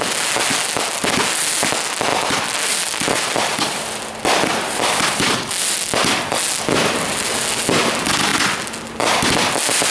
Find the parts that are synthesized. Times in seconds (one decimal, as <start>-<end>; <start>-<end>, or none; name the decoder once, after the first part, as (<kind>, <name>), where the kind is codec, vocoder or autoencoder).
2.1-5.3 (vocoder, BigVGAN v2)